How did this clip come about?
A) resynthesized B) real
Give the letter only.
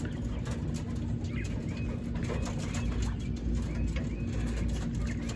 B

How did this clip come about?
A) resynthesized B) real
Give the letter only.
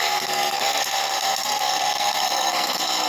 A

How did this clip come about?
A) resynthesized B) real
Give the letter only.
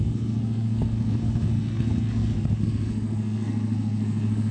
A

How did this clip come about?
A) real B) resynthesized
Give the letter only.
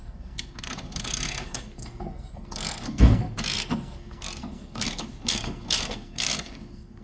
B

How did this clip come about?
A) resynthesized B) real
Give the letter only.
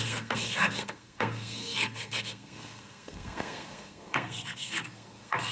A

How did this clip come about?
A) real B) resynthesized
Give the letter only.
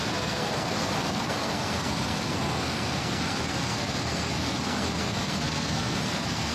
B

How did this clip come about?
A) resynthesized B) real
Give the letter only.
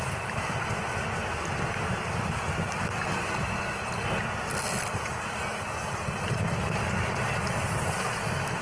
B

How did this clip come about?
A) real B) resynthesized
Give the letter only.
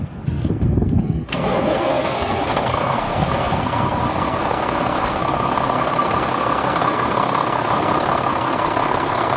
B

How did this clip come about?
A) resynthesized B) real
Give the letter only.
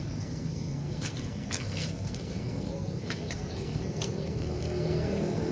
A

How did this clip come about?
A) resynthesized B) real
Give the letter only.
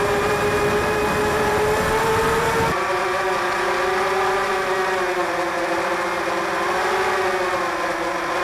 B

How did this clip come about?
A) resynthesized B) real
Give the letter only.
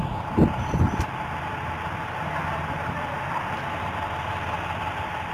B